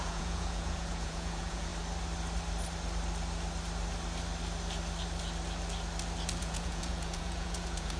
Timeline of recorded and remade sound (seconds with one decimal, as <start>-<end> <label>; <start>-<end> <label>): 0.0-1.7 remade; 1.7-6.4 recorded; 6.4-8.0 remade